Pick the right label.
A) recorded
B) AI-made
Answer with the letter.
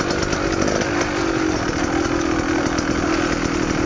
A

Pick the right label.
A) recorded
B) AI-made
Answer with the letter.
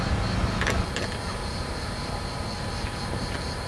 A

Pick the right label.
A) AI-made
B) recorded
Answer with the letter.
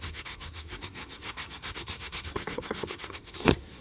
A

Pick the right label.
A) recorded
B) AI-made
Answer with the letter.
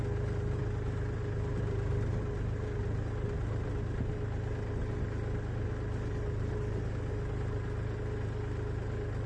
A